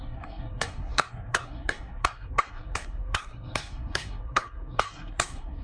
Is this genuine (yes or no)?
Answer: no